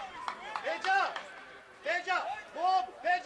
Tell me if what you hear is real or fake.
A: real